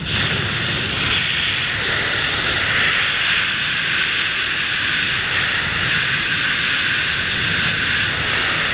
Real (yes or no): yes